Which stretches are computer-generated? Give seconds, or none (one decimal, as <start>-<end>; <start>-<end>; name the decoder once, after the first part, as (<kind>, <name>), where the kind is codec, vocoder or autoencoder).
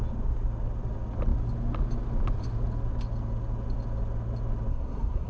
4.7-5.3 (codec, SNAC)